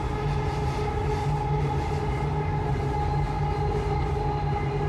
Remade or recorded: recorded